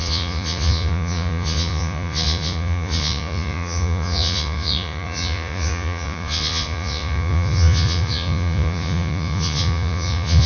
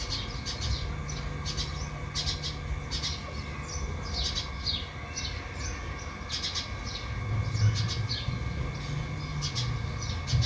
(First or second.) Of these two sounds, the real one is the second